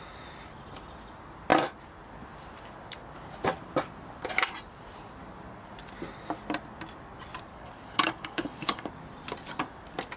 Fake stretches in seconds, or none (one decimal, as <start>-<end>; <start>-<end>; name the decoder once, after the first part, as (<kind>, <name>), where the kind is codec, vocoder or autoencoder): 7.5-8.9 (codec, DAC)